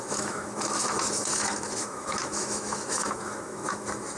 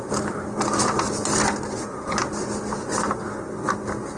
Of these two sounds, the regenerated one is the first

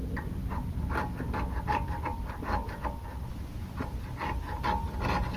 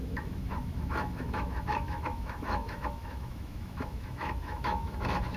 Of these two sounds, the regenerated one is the second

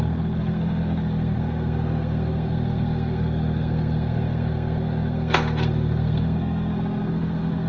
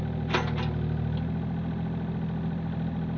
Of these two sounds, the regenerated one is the first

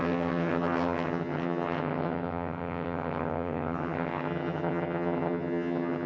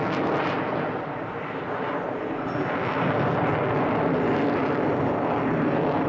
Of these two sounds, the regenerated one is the first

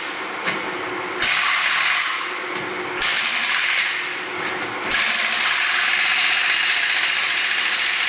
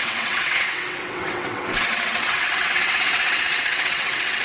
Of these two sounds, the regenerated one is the second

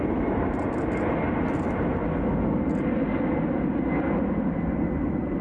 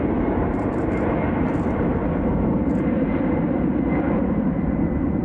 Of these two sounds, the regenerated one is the second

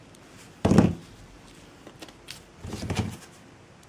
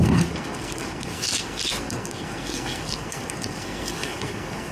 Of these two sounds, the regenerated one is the second